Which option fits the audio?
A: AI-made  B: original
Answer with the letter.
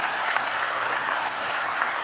A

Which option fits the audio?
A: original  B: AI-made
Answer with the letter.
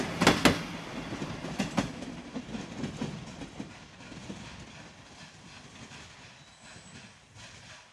A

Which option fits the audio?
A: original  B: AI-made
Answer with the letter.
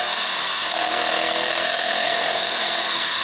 B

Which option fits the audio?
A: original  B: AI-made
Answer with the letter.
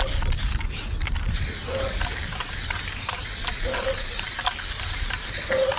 A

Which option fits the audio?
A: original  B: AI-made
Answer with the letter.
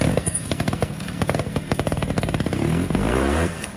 B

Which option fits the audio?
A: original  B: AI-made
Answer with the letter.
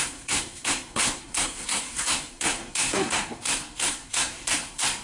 B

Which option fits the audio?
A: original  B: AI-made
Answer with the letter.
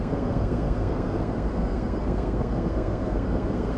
B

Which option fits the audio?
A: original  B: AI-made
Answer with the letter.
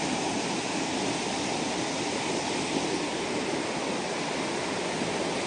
A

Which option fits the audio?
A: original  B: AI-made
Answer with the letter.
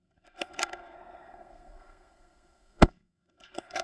B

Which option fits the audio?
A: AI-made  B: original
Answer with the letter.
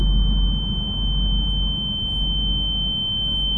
B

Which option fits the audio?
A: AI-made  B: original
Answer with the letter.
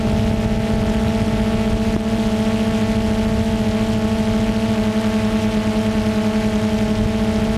B